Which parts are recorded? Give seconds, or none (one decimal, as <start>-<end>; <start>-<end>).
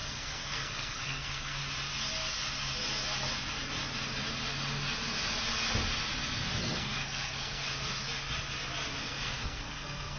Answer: 1.6-6.6; 7.6-9.0